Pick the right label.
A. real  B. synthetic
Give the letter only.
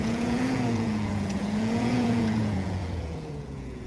B